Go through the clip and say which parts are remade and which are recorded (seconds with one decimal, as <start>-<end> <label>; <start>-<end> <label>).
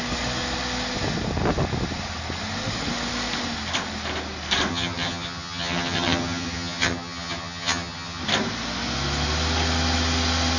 0.0-4.7 recorded; 4.7-8.2 remade; 8.2-10.6 recorded